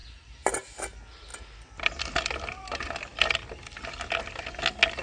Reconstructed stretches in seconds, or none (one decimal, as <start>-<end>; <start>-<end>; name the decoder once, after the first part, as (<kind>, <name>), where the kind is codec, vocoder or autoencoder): none